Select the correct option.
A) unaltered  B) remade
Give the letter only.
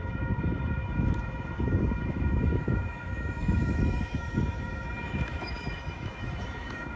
B